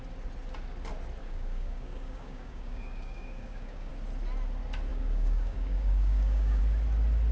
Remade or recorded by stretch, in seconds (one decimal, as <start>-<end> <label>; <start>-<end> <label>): 0.0-1.2 recorded; 1.2-3.9 remade; 3.9-4.9 recorded; 4.9-6.6 remade; 6.6-7.3 recorded